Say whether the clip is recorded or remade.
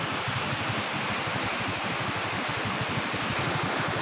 recorded